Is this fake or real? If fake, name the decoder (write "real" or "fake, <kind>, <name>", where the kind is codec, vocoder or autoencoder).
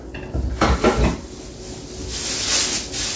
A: real